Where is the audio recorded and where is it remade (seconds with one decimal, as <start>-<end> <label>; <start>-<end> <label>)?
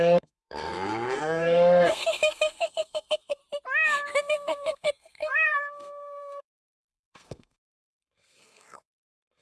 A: 0.0-3.4 remade; 3.4-4.2 recorded; 4.2-9.4 remade